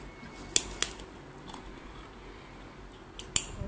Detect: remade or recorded recorded